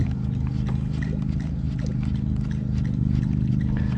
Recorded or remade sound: recorded